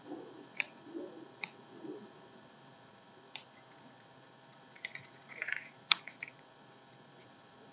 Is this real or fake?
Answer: fake